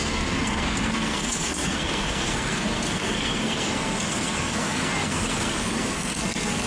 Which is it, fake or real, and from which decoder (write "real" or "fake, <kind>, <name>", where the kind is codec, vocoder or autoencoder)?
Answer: fake, codec, SNAC